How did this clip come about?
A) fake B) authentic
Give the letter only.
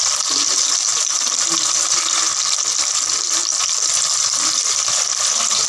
B